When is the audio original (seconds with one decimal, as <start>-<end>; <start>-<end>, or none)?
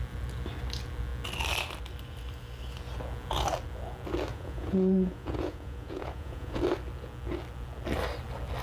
0.0-4.3; 6.6-8.6